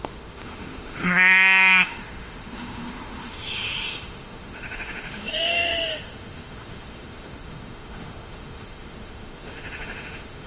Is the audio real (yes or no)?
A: no